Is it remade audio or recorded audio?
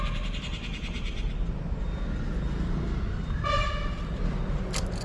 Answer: recorded